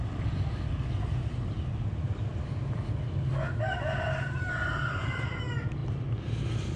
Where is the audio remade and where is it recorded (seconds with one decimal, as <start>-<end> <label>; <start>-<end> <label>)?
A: 0.0-2.3 recorded; 2.3-3.3 remade; 3.3-6.8 recorded